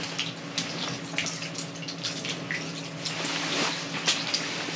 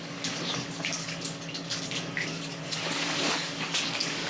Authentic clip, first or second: first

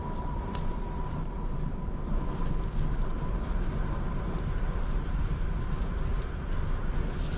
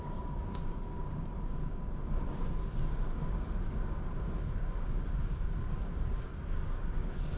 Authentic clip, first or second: first